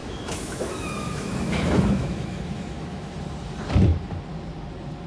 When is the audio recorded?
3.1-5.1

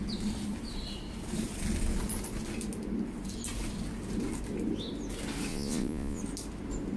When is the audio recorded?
0.0-5.5; 6.2-7.0

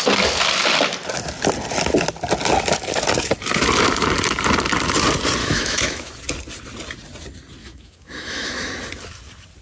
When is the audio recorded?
0.0-5.4; 6.1-7.6; 8.7-9.6

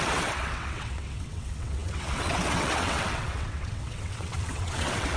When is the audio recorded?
none

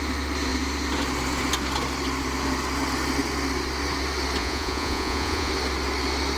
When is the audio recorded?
0.0-4.4; 5.5-6.4

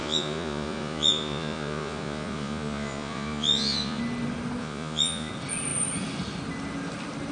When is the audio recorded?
4.0-4.6; 5.3-7.3

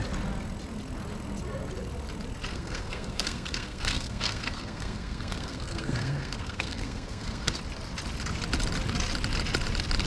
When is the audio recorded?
0.0-2.5; 7.6-10.1

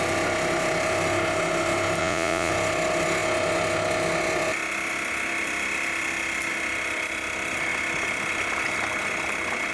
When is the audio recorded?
0.0-2.0; 2.5-9.7